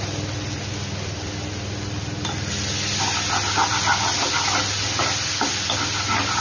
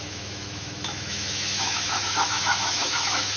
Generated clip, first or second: second